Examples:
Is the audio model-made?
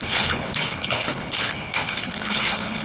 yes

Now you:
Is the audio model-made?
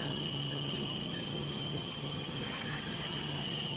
yes